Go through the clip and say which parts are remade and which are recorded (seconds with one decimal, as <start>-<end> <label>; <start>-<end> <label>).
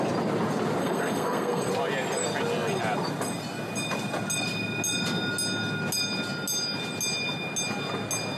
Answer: 0.0-0.8 recorded; 0.8-1.7 remade; 1.7-8.4 recorded